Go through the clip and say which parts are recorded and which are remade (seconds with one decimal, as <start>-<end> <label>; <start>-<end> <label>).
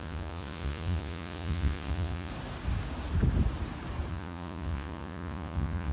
0.0-2.3 remade; 2.3-4.1 recorded; 4.1-5.9 remade